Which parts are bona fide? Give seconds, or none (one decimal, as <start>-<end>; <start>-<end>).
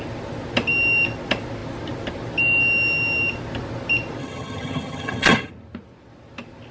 0.0-4.2; 5.5-6.7